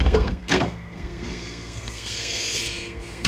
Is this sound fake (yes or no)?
yes